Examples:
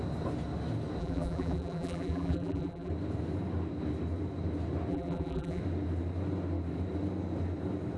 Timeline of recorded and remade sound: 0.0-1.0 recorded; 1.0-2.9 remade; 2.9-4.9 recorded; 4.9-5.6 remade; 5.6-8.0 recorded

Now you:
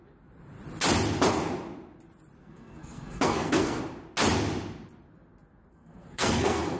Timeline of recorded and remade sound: 0.0-2.4 recorded; 2.4-3.8 remade; 3.8-5.7 recorded; 5.7-6.8 remade

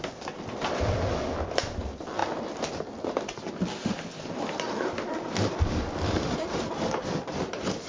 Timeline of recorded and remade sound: 0.0-7.9 recorded